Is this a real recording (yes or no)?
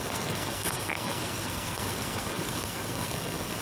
no